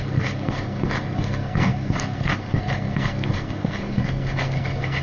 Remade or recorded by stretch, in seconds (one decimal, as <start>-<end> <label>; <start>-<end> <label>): 0.0-5.0 remade